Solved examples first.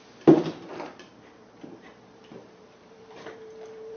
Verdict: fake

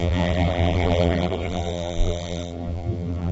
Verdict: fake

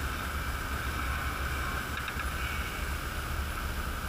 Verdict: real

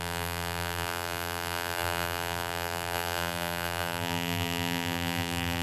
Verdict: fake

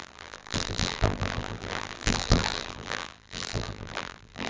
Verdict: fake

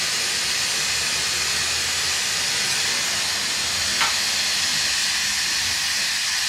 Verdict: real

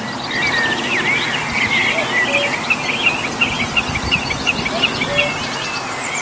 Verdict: real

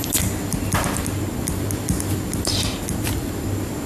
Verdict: fake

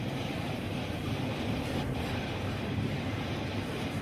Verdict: fake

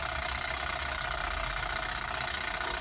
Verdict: real